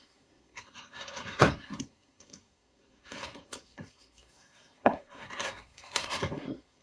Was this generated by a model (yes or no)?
yes